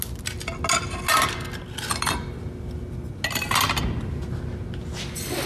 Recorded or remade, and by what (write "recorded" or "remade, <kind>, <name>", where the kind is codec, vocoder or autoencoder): recorded